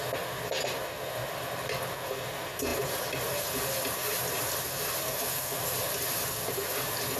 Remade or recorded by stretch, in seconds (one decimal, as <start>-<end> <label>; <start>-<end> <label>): 0.0-7.2 recorded